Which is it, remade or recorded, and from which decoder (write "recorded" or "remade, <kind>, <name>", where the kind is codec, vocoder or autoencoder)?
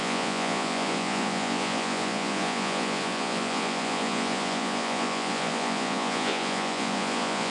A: remade, vocoder, Vocos